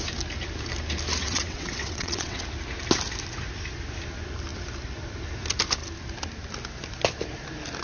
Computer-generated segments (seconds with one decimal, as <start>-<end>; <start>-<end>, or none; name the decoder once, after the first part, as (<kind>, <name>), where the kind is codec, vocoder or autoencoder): 1.2-2.4 (vocoder, WaveNeXt)